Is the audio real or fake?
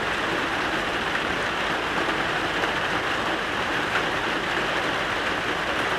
real